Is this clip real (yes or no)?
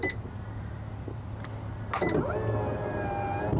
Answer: yes